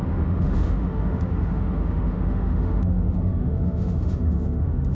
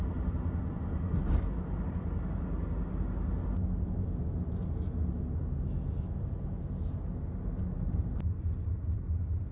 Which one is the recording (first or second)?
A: second